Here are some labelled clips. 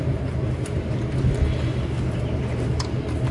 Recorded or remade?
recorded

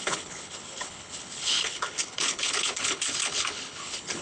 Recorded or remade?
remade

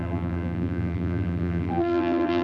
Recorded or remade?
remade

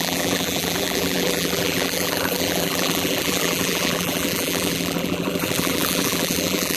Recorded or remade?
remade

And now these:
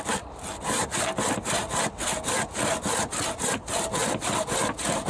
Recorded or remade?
recorded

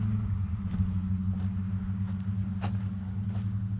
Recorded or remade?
recorded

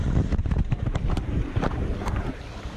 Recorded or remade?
remade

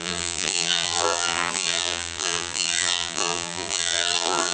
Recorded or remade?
remade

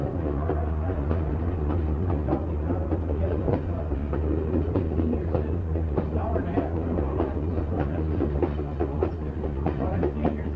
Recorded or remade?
remade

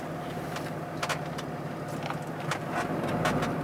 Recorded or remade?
recorded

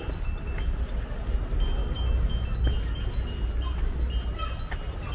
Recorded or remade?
recorded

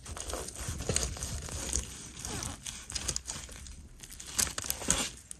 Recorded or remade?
recorded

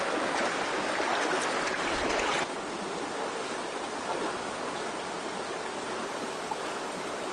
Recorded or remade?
recorded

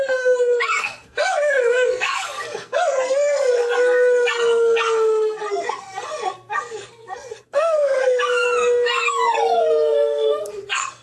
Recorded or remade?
remade